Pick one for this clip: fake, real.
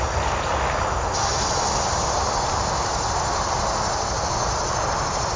real